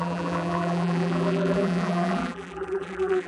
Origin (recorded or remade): remade